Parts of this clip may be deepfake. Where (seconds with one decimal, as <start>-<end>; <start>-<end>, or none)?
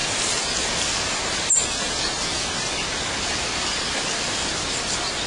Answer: none